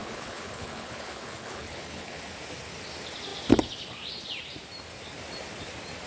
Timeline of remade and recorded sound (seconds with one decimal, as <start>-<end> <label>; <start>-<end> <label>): 0.0-2.2 remade; 2.2-6.1 recorded